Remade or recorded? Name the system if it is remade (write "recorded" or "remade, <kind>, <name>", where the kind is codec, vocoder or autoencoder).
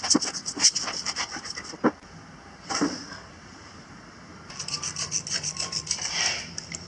recorded